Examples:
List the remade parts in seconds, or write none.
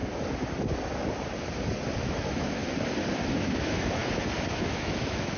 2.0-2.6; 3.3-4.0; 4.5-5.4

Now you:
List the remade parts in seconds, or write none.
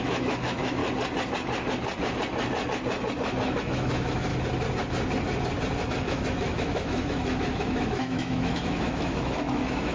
0.0-0.8; 3.6-4.3; 5.9-9.9